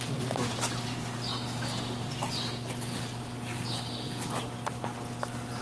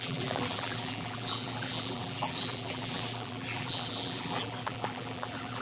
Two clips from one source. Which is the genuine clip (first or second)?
first